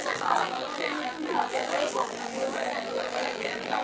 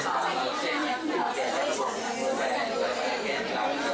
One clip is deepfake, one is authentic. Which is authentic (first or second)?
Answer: second